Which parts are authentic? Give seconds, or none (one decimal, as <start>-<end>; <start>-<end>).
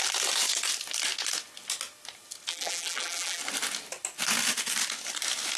0.0-2.5; 3.4-5.6